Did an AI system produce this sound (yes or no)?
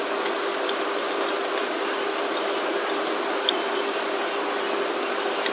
no